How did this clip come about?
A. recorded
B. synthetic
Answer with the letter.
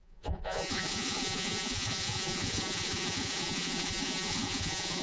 B